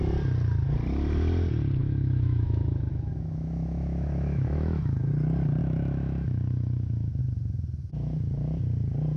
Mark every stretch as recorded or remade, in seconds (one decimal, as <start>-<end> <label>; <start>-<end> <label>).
0.0-1.8 recorded; 1.8-5.1 remade; 5.1-5.6 recorded; 5.6-7.2 remade; 7.2-9.2 recorded